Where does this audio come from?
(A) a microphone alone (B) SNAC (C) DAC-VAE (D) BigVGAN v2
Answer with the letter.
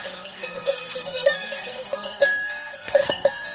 B